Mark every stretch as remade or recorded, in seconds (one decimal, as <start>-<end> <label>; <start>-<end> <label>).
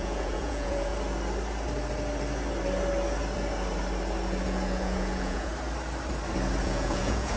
0.0-0.9 remade; 0.9-4.4 recorded; 4.4-5.5 remade; 5.5-6.6 recorded; 6.6-7.4 remade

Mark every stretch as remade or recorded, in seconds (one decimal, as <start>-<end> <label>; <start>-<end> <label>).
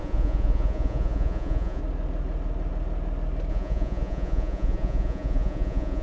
0.0-1.8 remade; 1.8-3.5 recorded; 3.5-6.0 remade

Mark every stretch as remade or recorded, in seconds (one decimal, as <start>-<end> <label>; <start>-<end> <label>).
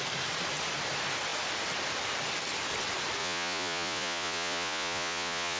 0.0-3.2 recorded; 3.2-5.6 remade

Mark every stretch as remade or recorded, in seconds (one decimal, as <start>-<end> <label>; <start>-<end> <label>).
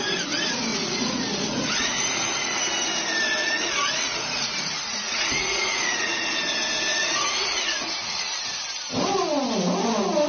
0.0-0.7 recorded; 0.7-2.6 remade; 2.6-3.4 recorded; 3.4-6.3 remade; 6.3-6.9 recorded; 6.9-8.4 remade; 8.4-10.3 recorded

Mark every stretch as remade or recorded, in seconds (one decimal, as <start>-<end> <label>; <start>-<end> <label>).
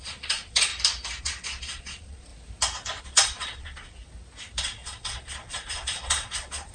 0.0-0.7 remade; 0.7-1.2 recorded; 1.2-2.3 remade; 2.3-3.0 recorded; 3.0-4.0 remade; 4.0-4.6 recorded; 4.6-6.7 remade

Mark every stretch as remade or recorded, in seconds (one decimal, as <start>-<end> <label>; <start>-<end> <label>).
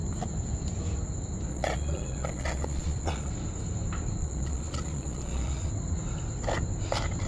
0.0-1.5 recorded; 1.5-3.3 remade; 3.3-4.2 recorded; 4.2-5.7 remade; 5.7-7.3 recorded